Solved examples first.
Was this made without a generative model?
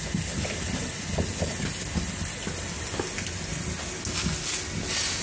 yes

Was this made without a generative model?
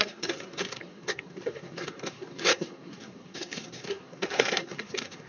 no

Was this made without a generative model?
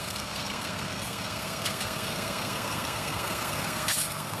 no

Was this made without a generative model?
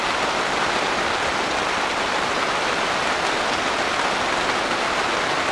yes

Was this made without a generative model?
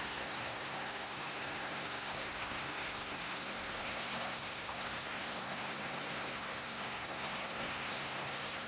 no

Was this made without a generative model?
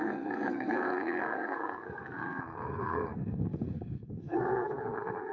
no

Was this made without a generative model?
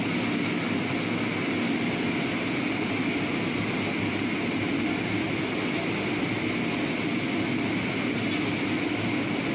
yes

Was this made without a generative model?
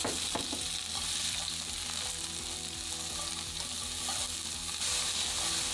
yes